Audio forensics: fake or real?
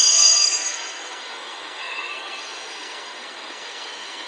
fake